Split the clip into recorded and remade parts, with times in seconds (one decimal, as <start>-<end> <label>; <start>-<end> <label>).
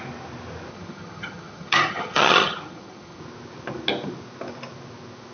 0.0-0.7 recorded; 0.7-3.2 remade; 3.2-5.3 recorded